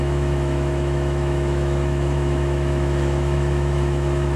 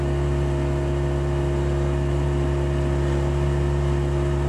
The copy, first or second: first